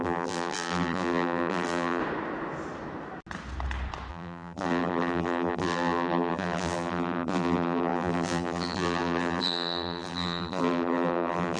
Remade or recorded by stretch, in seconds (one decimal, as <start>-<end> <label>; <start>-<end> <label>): 0.0-2.0 remade; 2.0-4.1 recorded; 4.1-11.6 remade